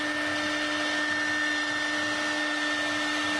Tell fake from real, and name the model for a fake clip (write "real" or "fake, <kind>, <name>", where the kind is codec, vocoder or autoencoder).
real